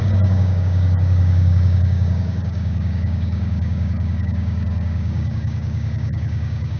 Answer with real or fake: fake